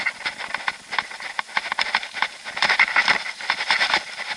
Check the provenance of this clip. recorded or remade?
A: recorded